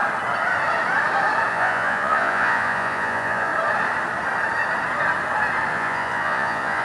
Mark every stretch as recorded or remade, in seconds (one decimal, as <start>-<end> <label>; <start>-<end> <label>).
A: 0.0-1.5 recorded; 1.5-3.5 remade; 3.5-5.7 recorded; 5.7-6.8 remade